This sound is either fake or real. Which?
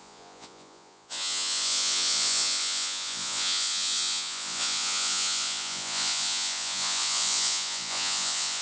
fake